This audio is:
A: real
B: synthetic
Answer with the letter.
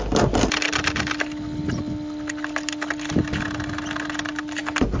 A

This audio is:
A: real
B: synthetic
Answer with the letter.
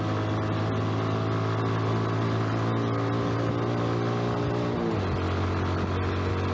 A